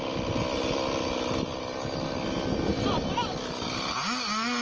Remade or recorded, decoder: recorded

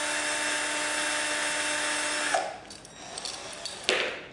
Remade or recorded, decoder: recorded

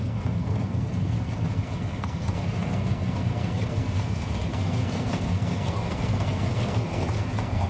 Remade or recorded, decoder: remade, codec, SNAC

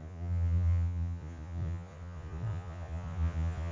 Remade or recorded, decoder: remade, vocoder, Vocos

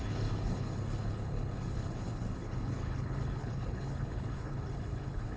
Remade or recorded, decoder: remade, codec, HILCodec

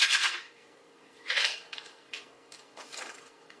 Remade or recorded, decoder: remade, codec, SNAC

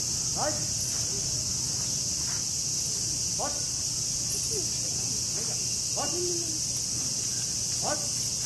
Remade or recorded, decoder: recorded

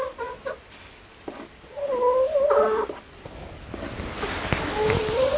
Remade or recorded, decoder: recorded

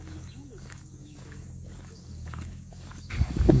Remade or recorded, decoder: remade, codec, DAC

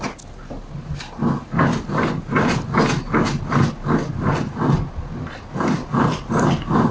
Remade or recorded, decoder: recorded